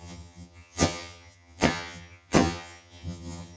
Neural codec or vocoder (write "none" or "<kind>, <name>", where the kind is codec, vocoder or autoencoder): vocoder, HiFi-GAN